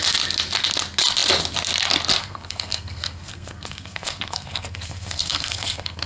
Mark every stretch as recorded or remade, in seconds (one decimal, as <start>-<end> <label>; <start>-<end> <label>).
0.0-2.2 recorded; 2.2-6.1 remade